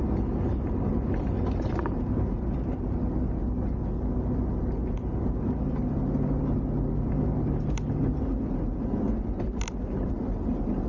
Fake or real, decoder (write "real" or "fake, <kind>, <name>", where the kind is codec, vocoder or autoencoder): real